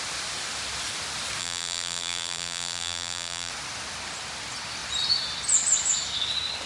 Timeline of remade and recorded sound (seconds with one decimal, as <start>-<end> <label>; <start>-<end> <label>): 0.0-1.4 recorded; 1.4-3.5 remade; 3.5-6.7 recorded